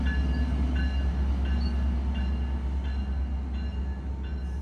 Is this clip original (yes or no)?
yes